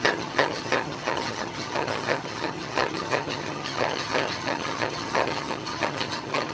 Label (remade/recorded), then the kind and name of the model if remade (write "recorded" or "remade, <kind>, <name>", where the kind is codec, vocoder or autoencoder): remade, vocoder, HiFi-GAN